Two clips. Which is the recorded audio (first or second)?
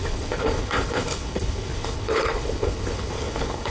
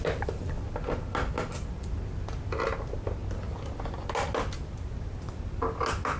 second